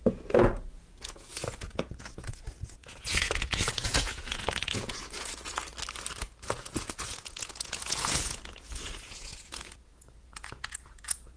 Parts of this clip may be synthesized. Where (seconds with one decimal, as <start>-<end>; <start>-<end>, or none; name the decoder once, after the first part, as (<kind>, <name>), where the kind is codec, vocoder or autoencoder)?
0.0-5.7 (vocoder, Vocos); 6.2-11.4